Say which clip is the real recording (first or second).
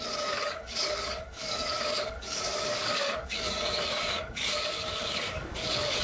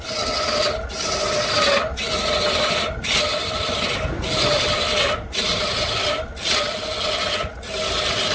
second